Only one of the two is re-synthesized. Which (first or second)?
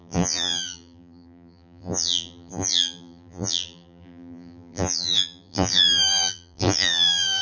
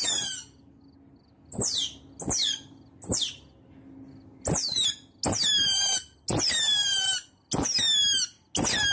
first